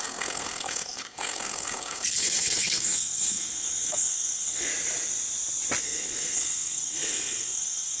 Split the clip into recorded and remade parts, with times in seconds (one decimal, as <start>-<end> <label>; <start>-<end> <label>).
0.0-4.7 remade; 4.7-5.8 recorded; 5.8-8.0 remade